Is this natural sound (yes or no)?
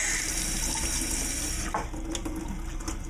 yes